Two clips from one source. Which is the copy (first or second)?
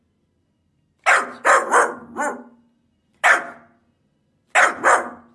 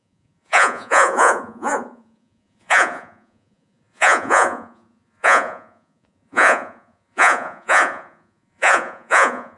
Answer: second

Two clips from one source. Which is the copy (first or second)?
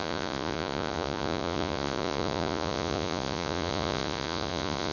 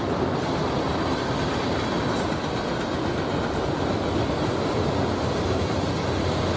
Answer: first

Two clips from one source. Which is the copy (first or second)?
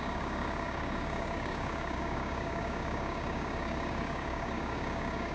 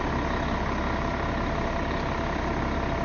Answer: first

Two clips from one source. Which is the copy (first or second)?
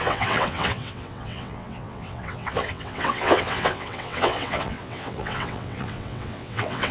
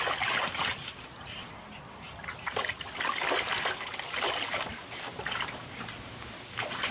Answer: first